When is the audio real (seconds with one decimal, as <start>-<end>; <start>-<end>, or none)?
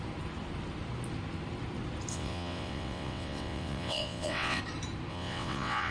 0.0-2.1; 4.6-5.1